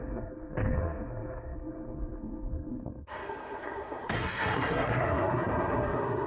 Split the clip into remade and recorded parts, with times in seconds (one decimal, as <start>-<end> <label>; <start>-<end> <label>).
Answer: 0.0-6.3 remade